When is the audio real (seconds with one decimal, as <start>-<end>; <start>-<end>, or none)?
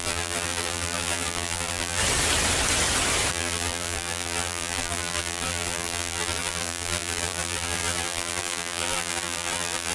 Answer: 2.0-3.3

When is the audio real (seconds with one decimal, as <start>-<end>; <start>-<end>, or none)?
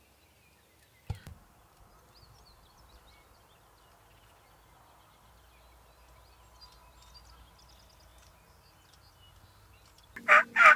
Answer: 0.0-10.8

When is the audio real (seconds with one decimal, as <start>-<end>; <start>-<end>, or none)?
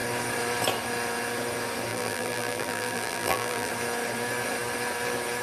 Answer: 0.0-1.9; 3.7-5.4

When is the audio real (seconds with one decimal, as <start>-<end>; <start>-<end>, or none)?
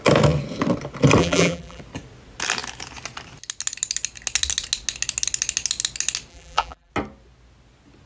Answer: 0.0-1.2; 1.8-6.3; 6.9-8.1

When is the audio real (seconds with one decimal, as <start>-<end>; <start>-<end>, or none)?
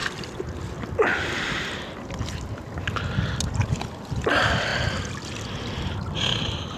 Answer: 2.1-3.6; 4.3-6.8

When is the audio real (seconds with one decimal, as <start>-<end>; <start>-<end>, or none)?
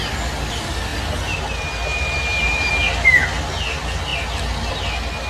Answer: 0.0-1.9; 2.7-5.3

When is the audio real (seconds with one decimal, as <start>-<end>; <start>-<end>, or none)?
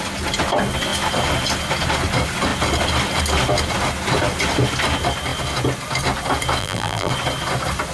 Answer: 0.0-6.6; 7.1-7.9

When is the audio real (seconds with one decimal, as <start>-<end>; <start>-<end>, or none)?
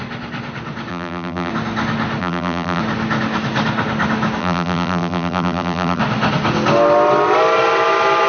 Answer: 0.0-0.9; 1.5-2.2; 2.8-4.4; 6.0-8.3